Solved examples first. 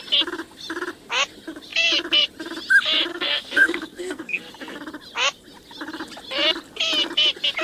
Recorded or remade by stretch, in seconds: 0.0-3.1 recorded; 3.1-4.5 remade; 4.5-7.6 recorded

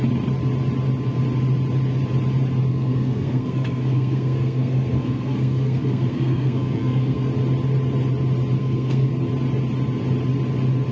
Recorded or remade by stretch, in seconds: 0.0-2.7 recorded; 2.7-7.3 remade; 7.3-8.6 recorded; 8.6-9.1 remade; 9.1-10.9 recorded

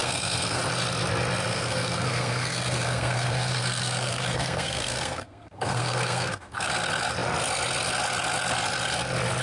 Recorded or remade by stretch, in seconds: 0.0-0.6 remade; 0.6-1.5 recorded; 1.5-6.7 remade; 6.7-9.4 recorded

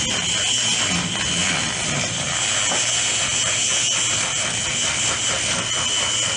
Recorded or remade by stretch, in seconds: 0.0-6.4 recorded

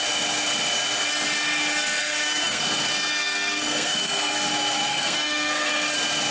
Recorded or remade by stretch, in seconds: 0.0-2.0 recorded; 2.0-2.6 remade; 2.6-3.1 recorded; 3.1-4.5 remade; 4.5-4.9 recorded; 4.9-5.7 remade; 5.7-6.3 recorded

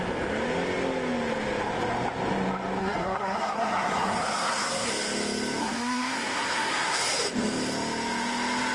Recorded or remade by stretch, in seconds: 0.0-2.8 recorded; 2.8-4.9 remade; 4.9-5.6 recorded; 5.6-7.0 remade; 7.0-8.7 recorded

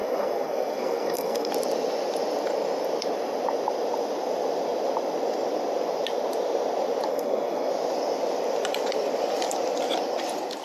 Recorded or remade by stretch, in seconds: 0.0-1.5 remade; 1.5-7.1 recorded; 7.1-7.7 remade; 7.7-10.6 recorded